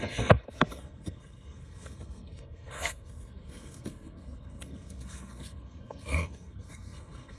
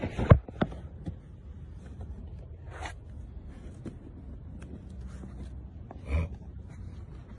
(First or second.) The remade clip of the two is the first